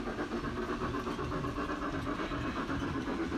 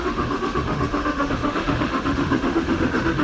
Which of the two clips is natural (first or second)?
first